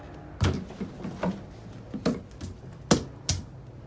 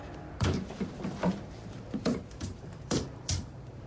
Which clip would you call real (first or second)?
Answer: first